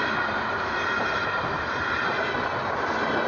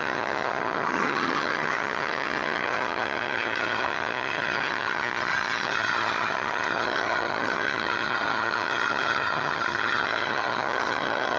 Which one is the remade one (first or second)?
second